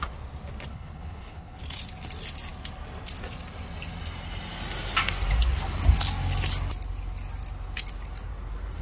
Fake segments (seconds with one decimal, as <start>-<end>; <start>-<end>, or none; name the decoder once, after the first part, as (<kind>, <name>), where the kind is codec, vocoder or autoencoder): 0.7-1.6 (codec, HILCodec)